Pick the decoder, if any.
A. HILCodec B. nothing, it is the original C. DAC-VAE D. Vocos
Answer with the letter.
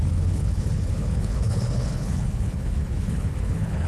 A